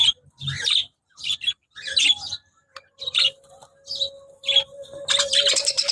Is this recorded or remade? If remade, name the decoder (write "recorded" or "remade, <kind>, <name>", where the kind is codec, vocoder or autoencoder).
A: recorded